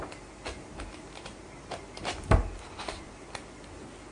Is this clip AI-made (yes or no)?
no